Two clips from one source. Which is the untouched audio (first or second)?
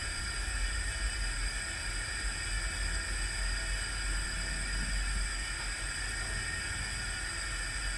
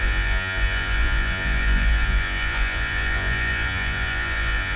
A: first